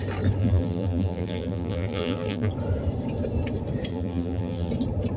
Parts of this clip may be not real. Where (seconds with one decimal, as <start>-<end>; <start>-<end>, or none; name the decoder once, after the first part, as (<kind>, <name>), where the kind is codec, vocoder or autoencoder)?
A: 0.4-2.5 (vocoder, BigVGAN v2); 3.9-4.7